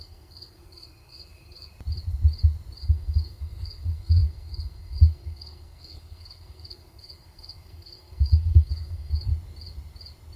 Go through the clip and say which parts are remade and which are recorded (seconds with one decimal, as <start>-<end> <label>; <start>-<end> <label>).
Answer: 0.0-1.7 remade; 1.7-2.8 recorded; 2.8-9.3 remade; 9.3-10.4 recorded